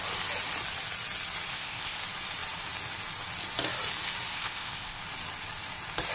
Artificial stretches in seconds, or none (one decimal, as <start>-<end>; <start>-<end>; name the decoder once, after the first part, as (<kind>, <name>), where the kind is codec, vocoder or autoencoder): 1.5-2.0 (codec, ZipCodec); 4.3-5.0